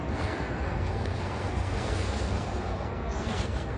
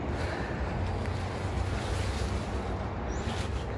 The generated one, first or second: first